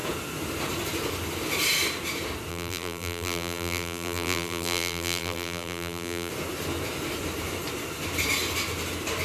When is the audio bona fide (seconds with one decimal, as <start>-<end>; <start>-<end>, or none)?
0.0-2.5; 6.3-9.2